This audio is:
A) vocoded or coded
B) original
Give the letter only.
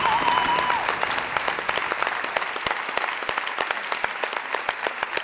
B